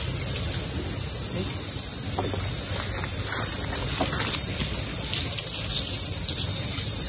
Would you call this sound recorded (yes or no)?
yes